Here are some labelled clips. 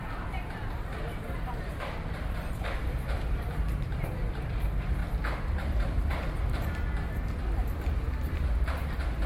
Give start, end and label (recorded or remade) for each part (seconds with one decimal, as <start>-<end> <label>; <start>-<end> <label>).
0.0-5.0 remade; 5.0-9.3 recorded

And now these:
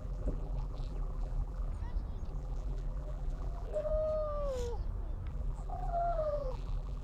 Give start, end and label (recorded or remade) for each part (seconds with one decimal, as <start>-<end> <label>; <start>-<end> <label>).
0.0-1.7 remade; 1.7-2.3 recorded; 2.3-3.9 remade; 3.9-5.3 recorded; 5.3-7.0 remade

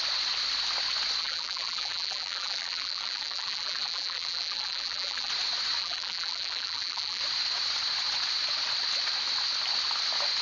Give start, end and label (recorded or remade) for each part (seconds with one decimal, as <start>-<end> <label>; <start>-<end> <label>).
0.0-1.2 recorded; 1.2-5.3 remade; 5.3-5.8 recorded; 5.8-7.2 remade; 7.2-10.4 recorded